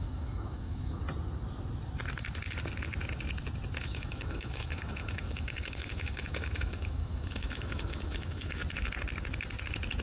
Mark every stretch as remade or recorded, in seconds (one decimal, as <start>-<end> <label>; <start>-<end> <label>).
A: 0.0-1.0 remade; 1.0-3.8 recorded; 3.8-8.6 remade; 8.6-10.0 recorded